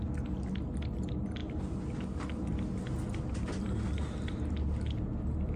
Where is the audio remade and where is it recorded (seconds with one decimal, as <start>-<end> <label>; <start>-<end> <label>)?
0.0-5.6 recorded